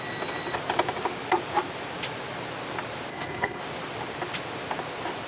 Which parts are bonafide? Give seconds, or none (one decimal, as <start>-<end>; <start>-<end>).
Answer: 0.0-3.1; 3.6-5.3